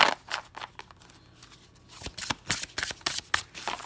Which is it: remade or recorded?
recorded